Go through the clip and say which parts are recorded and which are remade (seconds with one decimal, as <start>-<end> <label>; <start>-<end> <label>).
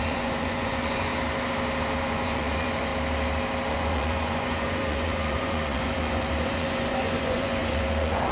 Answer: 0.0-1.1 remade; 1.1-2.0 recorded; 2.0-2.9 remade; 2.9-3.7 recorded; 3.7-8.3 remade